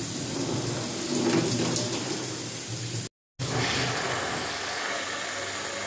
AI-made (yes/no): no